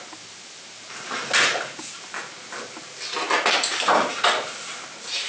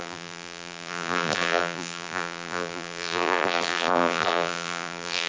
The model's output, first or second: second